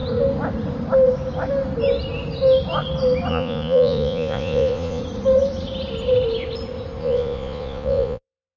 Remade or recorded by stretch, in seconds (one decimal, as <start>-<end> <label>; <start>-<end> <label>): 0.0-3.3 recorded; 3.3-5.0 remade; 5.0-7.0 recorded; 7.0-8.6 remade